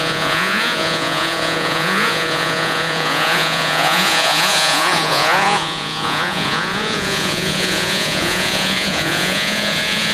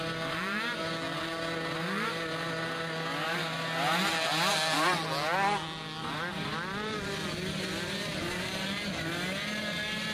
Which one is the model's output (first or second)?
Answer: first